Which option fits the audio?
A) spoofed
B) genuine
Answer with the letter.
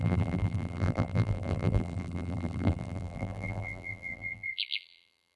A